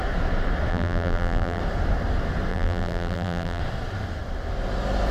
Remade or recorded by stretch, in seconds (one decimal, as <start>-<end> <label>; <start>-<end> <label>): 0.0-0.7 recorded; 0.7-1.6 remade; 1.6-2.5 recorded; 2.5-3.6 remade; 3.6-5.1 recorded